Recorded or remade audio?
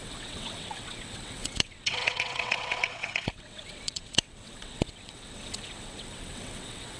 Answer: remade